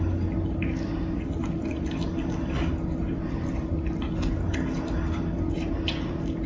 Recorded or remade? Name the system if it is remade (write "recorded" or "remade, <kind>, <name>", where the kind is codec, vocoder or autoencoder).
recorded